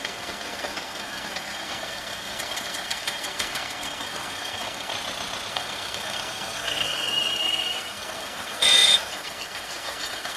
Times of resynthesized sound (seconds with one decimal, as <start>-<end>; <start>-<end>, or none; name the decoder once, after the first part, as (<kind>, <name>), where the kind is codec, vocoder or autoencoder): 0.0-4.9 (codec, SNAC); 5.5-10.4